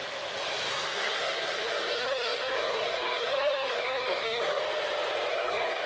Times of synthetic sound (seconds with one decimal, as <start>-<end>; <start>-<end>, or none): 0.7-4.6; 5.3-5.9